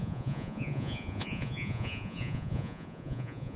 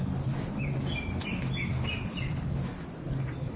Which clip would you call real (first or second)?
second